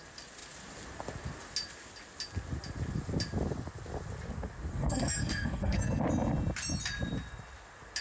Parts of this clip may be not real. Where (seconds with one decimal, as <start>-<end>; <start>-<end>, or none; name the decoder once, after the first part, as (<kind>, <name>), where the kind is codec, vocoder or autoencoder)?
4.7-6.0 (codec, SNAC)